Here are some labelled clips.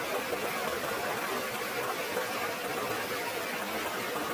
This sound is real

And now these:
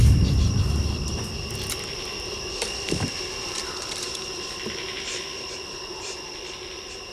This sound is fake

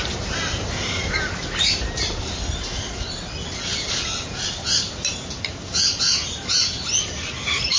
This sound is real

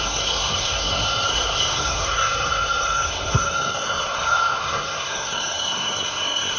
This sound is fake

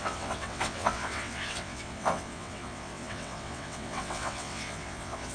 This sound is fake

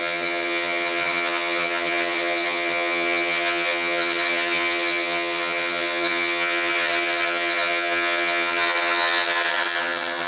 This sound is fake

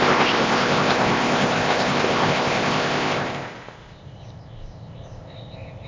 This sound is fake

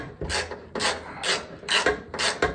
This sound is real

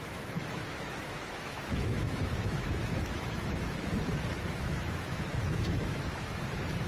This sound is fake